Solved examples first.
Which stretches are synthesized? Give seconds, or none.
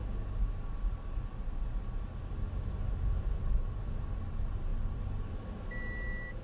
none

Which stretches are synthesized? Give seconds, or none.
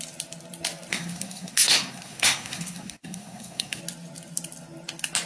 0.9-3.8 (codec, SNAC)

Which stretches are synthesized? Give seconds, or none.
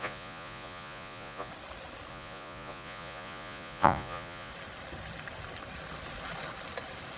0.0-1.5 (vocoder, Vocos); 2.1-4.5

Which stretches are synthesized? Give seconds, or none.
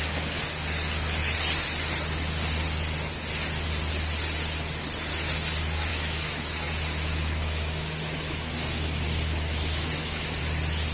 5.9-10.4 (autoencoder, DAC-VAE)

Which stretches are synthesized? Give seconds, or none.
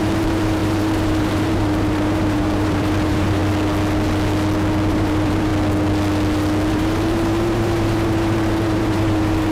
0.0-3.4 (vocoder, BigVGAN v2); 4.9-5.5; 6.7-9.5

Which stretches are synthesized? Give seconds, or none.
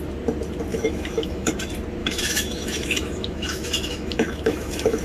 0.7-1.5 (autoencoder, DAC-VAE); 2.0-5.0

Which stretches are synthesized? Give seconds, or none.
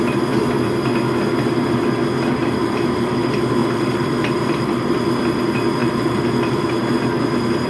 2.6-3.1 (vocoder, BigVGAN v2); 3.6-5.0; 5.8-6.3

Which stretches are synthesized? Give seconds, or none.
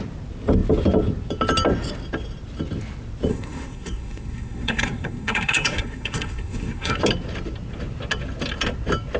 3.3-7.0 (codec, SNAC)